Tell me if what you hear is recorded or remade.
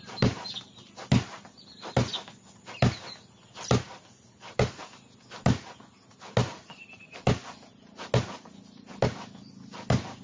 recorded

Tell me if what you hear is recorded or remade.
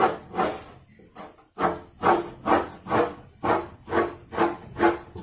recorded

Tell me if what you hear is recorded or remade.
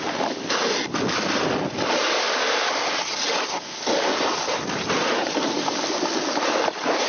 recorded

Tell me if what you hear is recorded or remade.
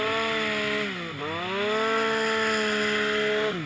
recorded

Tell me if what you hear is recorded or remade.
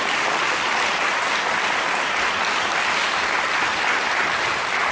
recorded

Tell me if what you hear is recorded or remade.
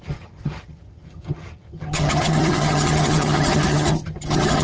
remade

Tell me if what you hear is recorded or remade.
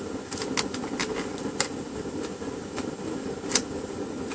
recorded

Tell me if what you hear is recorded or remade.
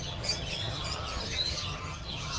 remade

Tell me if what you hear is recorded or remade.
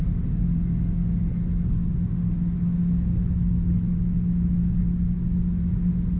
recorded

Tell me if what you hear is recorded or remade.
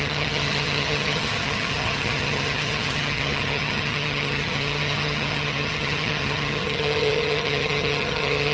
remade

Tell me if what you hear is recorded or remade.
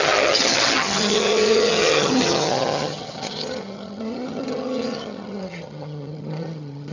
remade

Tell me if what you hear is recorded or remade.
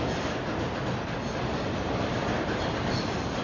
recorded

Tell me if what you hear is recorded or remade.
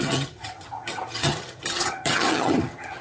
remade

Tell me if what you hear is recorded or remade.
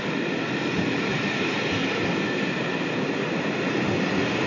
recorded